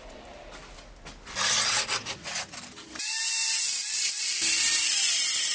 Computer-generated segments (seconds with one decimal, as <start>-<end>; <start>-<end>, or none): none